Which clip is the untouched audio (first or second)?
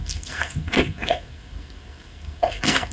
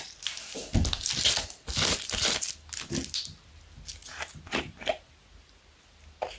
second